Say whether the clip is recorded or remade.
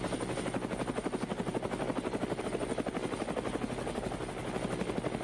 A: recorded